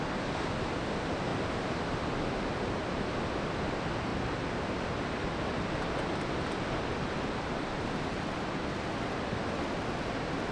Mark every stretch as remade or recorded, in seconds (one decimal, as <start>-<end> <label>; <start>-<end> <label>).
0.0-1.3 recorded; 1.3-2.0 remade; 2.0-10.5 recorded